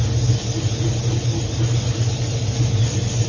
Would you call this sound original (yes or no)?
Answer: yes